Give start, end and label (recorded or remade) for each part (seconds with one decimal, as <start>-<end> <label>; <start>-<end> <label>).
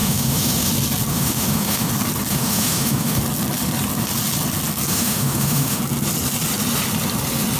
0.0-0.7 remade; 0.7-1.1 recorded; 1.1-1.9 remade; 1.9-2.3 recorded; 2.3-3.2 remade; 3.2-4.9 recorded; 4.9-5.8 remade; 5.8-7.6 recorded